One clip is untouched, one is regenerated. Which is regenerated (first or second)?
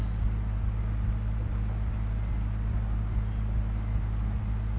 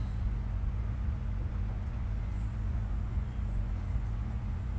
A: second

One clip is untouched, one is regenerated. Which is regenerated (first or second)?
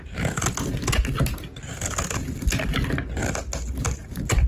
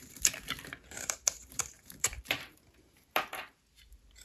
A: second